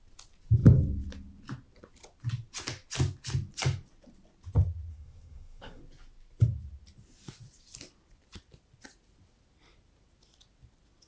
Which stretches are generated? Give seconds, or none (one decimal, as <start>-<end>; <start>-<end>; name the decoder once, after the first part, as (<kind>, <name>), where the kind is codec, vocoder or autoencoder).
4.9-5.8 (codec, SNAC)